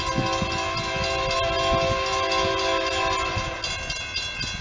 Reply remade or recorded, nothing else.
recorded